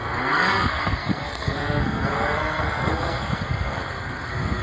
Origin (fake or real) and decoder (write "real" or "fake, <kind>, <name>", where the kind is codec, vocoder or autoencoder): fake, codec, SNAC